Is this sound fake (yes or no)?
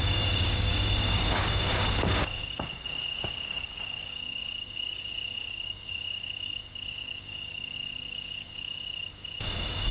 yes